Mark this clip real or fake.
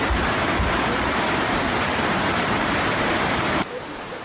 fake